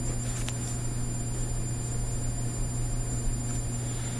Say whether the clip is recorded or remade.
recorded